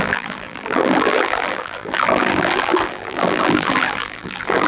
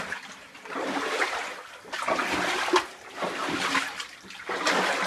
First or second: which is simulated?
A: first